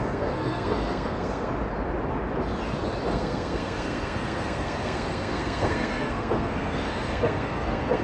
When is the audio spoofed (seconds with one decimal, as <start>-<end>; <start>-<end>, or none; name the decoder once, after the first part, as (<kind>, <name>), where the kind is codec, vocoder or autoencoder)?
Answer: 0.0-1.5 (codec, SNAC); 3.1-8.0